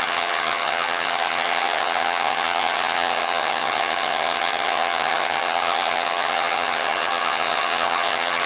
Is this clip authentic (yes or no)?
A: no